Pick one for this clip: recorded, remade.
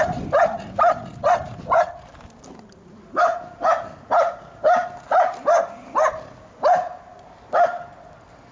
recorded